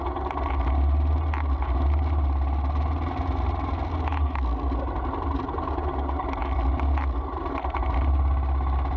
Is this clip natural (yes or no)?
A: yes